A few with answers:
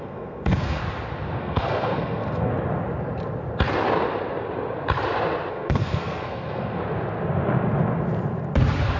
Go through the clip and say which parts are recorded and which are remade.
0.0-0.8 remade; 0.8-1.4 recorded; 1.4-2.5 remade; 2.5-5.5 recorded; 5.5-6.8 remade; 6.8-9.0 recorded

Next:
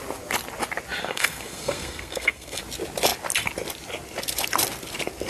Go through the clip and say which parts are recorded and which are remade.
0.0-1.0 recorded; 1.0-2.6 remade; 2.6-5.3 recorded